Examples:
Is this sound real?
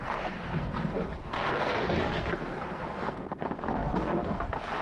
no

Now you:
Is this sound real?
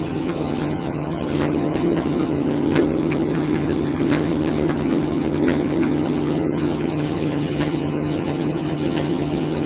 no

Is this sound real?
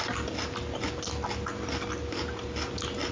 yes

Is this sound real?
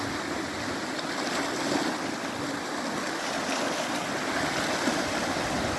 yes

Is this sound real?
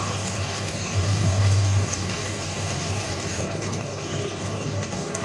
no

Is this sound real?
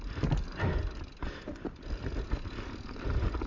yes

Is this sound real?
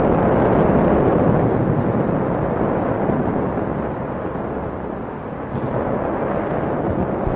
yes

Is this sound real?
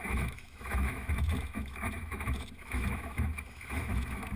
no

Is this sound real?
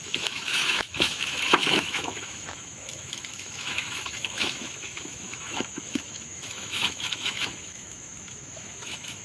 no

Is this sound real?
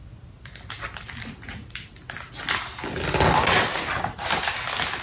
yes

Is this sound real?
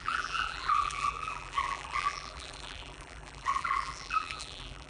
no